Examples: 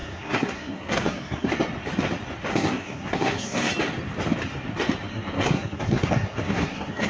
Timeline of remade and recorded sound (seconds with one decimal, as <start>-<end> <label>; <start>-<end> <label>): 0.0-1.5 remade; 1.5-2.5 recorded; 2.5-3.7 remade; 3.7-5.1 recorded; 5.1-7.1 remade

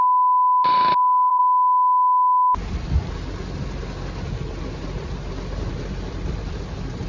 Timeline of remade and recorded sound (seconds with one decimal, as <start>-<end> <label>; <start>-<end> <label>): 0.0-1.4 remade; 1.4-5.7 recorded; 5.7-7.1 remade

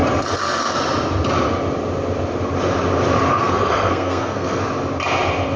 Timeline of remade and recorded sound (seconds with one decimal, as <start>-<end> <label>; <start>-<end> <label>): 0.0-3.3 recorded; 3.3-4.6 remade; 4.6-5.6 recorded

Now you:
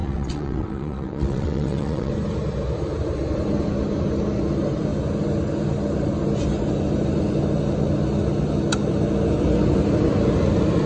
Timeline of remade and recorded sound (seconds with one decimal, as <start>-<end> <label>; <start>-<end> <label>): 0.0-2.1 remade; 2.1-10.9 recorded

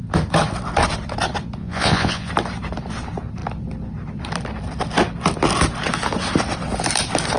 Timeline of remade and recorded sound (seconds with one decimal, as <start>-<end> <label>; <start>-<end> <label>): 0.0-1.6 recorded; 1.6-2.3 remade; 2.3-7.4 recorded

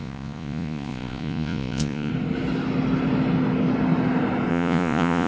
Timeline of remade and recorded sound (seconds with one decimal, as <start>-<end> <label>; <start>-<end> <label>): 0.0-2.1 remade; 2.1-4.5 recorded; 4.5-5.3 remade

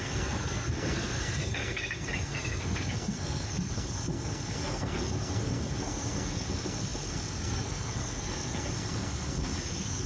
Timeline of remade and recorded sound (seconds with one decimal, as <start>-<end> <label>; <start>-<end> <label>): 0.0-10.1 remade